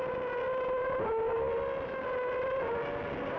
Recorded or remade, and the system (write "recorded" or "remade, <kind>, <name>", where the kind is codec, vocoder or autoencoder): recorded